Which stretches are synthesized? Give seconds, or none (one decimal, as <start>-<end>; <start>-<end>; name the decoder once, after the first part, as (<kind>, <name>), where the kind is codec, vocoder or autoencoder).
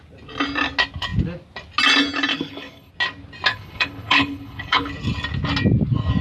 2.3-2.9 (codec, HILCodec); 3.5-4.9